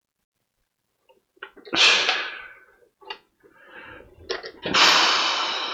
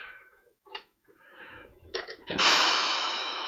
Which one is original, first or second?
first